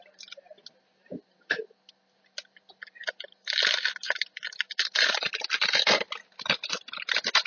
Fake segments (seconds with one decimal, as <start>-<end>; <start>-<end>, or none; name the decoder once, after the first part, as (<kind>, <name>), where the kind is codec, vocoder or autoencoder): none